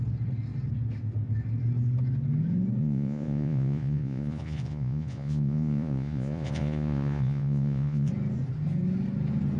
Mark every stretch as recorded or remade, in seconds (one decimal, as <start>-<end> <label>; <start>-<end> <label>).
0.0-2.8 recorded; 2.8-8.1 remade; 8.1-9.6 recorded